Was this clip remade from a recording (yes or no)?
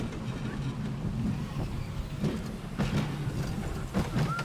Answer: no